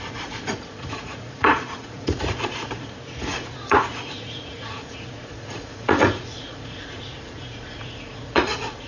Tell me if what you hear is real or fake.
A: fake